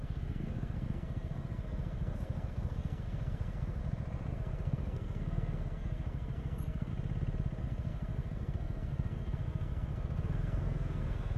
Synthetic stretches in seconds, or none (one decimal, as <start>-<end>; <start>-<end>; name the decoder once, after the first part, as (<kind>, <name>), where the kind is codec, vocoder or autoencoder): 0.0-3.8 (codec, SNAC); 4.3-6.9; 7.6-11.4